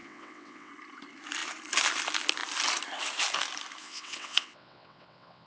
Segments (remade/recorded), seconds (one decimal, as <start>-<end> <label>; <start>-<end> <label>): 0.0-0.7 remade; 0.7-3.8 recorded; 3.8-5.5 remade